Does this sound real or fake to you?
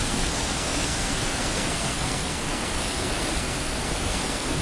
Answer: fake